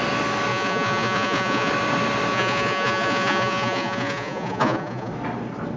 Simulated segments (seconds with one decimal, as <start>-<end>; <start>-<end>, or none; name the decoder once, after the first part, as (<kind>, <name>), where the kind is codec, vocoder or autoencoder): 0.5-1.7 (vocoder, Vocos); 2.3-5.1